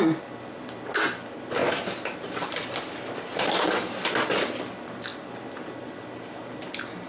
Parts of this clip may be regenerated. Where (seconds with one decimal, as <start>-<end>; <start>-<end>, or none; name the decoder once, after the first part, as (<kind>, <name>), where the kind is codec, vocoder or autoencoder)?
1.6-2.6 (vocoder, BigVGAN v2); 3.3-4.1